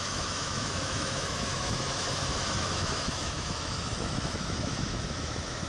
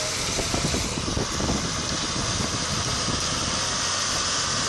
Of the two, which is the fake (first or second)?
first